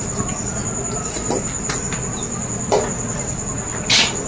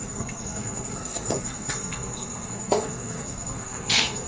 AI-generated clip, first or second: second